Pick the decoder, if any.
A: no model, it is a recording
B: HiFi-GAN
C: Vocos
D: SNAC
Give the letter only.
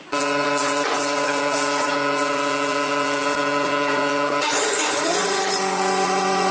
C